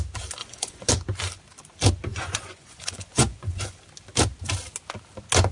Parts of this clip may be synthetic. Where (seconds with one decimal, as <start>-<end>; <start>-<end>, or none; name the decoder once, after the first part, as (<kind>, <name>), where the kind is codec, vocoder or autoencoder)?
0.4-0.9 (vocoder, Vocos); 2.1-3.8